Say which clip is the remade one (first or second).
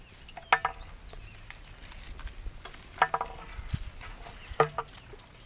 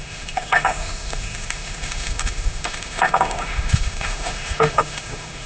second